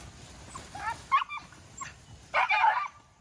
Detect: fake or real real